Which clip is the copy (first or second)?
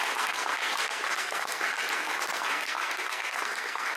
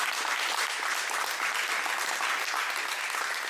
first